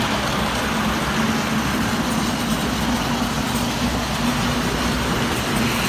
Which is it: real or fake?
real